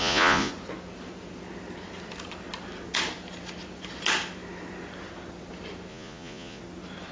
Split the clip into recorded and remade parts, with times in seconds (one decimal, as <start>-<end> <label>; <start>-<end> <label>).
0.0-0.5 remade; 0.5-5.9 recorded; 5.9-6.6 remade; 6.6-7.1 recorded